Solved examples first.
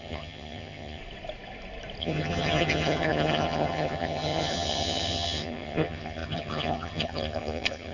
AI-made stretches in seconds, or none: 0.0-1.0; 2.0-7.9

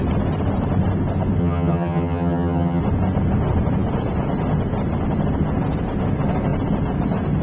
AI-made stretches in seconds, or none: 1.4-2.8

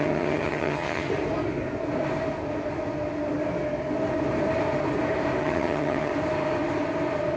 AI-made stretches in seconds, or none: 0.0-1.1; 5.4-6.1

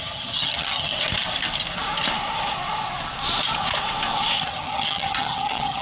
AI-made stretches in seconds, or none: 0.0-0.9; 4.4-5.8

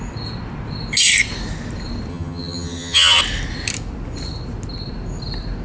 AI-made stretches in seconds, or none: 2.1-3.2

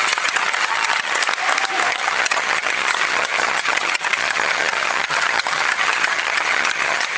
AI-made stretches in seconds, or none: 0.0-1.2; 1.9-7.2